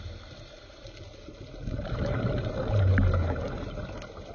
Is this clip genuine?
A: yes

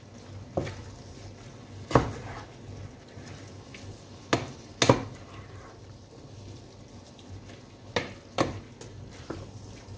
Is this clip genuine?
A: yes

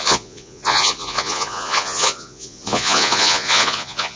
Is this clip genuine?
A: no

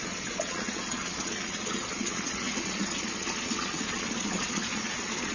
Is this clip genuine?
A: no